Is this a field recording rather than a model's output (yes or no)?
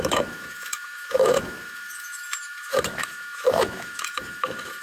no